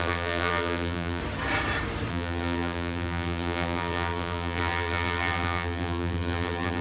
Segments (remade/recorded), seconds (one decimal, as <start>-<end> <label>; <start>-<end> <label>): 0.0-1.2 remade; 1.2-2.1 recorded; 2.1-6.8 remade